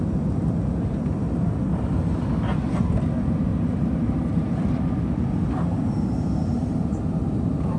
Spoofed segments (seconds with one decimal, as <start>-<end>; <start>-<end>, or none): 3.5-7.0